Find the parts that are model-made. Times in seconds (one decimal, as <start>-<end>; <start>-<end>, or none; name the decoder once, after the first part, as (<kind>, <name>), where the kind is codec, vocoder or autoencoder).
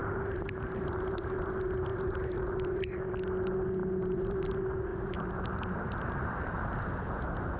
0.0-1.5 (vocoder, BigVGAN v2); 1.9-3.1; 3.8-4.5; 4.9-7.0